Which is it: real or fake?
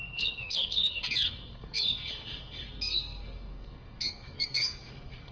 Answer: fake